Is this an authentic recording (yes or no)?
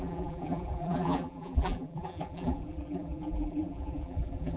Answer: no